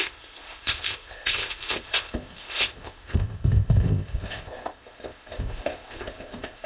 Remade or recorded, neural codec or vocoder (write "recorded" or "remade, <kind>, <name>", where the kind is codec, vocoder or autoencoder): remade, codec, ZipCodec